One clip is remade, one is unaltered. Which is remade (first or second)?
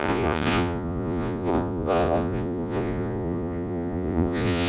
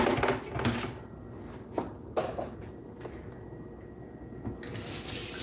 first